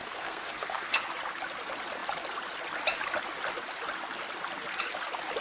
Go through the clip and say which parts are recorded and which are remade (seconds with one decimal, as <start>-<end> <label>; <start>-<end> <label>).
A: 0.0-1.0 remade; 1.0-5.4 recorded